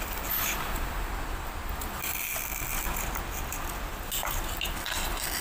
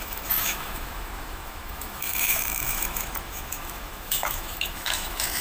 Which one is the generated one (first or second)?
second